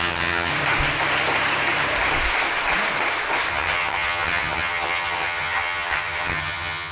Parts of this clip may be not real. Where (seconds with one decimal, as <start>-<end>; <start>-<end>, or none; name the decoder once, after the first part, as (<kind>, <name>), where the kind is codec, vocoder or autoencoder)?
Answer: 0.0-0.5 (vocoder, HiFi-GAN); 3.5-6.9